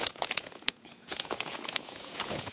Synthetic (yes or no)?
yes